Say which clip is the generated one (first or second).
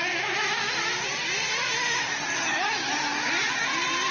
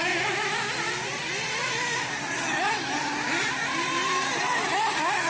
second